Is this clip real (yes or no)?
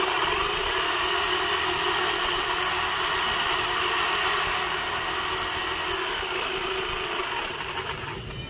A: yes